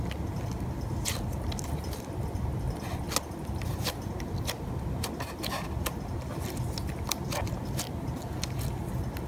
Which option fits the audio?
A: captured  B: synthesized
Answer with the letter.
A